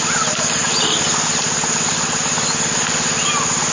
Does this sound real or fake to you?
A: real